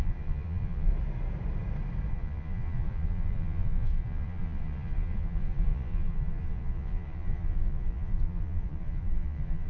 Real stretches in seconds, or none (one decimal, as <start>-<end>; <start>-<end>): 0.9-2.1